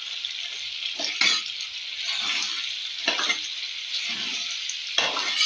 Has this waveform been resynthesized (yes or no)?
no